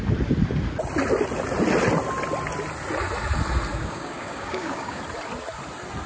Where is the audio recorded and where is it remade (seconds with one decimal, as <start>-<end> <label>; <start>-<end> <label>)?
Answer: 0.0-3.7 recorded; 3.7-5.0 remade; 5.0-6.1 recorded